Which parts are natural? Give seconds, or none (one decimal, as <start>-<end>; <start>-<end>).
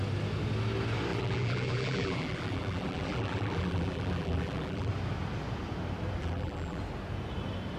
0.0-1.1; 4.9-6.2; 6.8-7.8